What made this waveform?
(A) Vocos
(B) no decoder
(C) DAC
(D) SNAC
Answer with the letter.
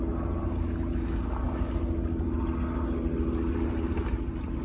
B